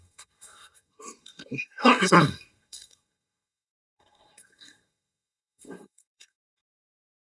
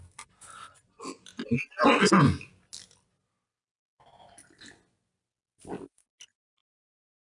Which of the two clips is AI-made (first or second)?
first